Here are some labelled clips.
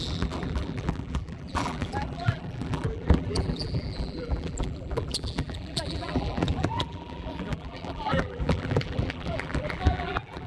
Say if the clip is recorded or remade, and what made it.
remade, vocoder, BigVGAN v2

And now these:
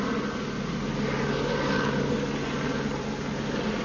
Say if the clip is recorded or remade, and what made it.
recorded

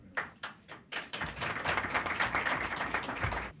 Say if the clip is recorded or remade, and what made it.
remade, vocoder, BigVGAN v2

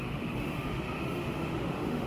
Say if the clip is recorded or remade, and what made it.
remade, autoencoder, DAC-VAE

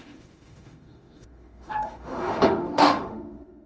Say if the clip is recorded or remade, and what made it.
remade, autoencoder, DAC-VAE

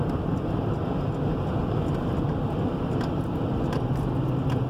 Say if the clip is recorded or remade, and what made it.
recorded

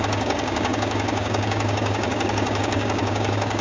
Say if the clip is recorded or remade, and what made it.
remade, codec, DAC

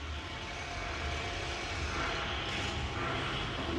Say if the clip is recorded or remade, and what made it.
recorded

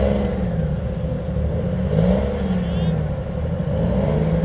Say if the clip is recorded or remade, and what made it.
recorded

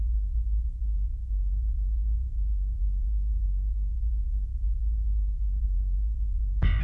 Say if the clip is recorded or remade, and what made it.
remade, vocoder, Vocos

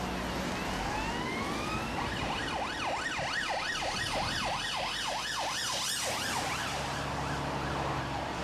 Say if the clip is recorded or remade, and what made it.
recorded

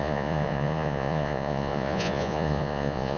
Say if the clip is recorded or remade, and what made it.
remade, vocoder, Vocos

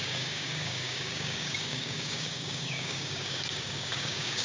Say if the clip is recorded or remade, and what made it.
remade, codec, DAC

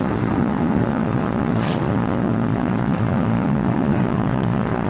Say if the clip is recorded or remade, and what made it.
remade, vocoder, Vocos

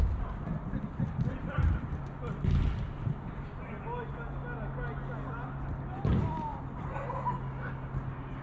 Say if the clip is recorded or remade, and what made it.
recorded